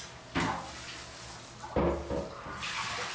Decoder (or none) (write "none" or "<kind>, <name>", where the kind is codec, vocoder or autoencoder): none